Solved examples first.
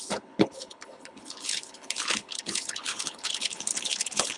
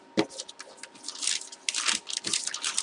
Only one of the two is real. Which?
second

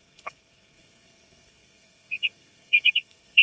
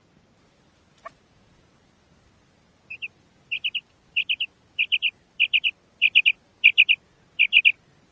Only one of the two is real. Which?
second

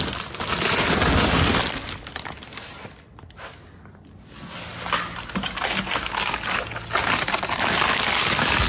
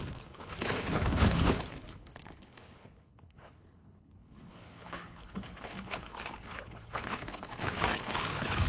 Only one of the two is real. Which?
first